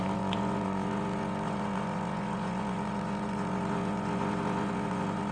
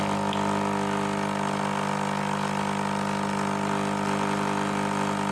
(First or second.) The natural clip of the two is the second